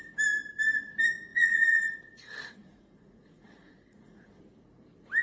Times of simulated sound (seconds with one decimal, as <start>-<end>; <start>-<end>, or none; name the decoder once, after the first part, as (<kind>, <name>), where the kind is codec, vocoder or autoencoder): 1.3-4.4 (vocoder, Vocos)